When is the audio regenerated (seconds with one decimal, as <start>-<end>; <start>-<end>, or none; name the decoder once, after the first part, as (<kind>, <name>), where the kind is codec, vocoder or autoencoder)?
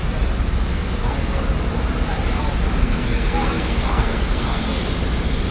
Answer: 0.7-1.4 (codec, SNAC); 2.8-4.8